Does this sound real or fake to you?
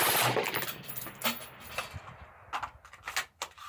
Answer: real